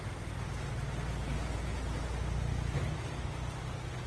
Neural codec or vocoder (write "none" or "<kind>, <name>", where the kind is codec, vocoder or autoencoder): none